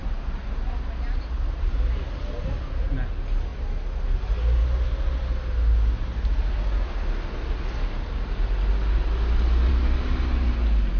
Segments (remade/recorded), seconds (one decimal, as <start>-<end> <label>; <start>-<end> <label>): 0.0-11.0 recorded